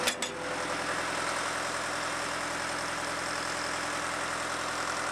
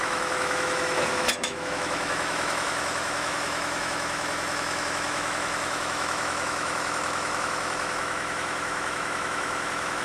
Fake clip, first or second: second